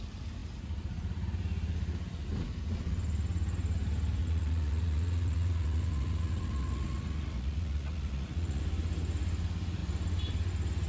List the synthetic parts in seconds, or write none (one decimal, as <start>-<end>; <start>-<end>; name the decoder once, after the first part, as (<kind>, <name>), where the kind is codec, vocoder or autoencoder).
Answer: 4.2-8.6 (vocoder, Vocos)